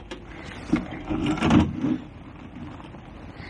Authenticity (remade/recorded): recorded